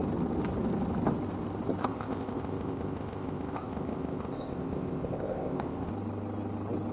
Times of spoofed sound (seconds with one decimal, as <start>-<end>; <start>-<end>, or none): 1.8-5.9